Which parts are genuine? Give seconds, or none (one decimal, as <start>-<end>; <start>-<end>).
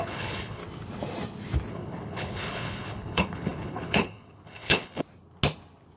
0.6-1.7; 5.0-6.0